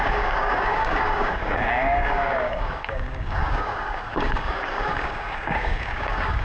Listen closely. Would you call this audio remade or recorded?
remade